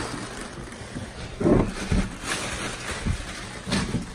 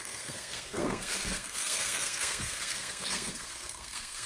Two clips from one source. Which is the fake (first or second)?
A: second